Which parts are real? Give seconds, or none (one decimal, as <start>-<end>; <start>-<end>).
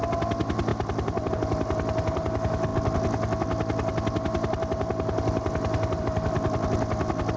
0.0-7.4